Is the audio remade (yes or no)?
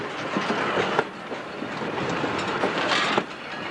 no